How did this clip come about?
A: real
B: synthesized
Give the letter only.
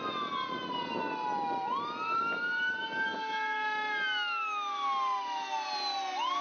A